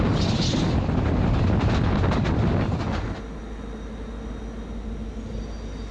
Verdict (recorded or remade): recorded